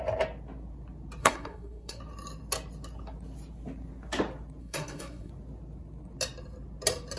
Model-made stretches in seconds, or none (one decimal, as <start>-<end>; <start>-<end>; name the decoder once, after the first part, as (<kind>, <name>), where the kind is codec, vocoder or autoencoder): 1.2-2.0 (codec, SNAC); 4.6-5.3